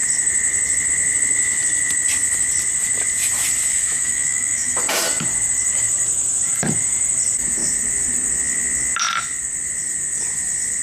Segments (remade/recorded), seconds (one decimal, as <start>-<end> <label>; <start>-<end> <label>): 0.0-3.7 recorded; 3.7-4.8 remade; 4.8-10.8 recorded